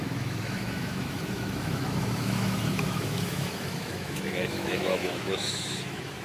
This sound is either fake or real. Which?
fake